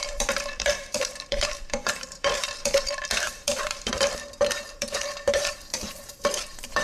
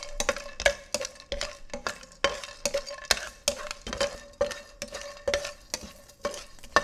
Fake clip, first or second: first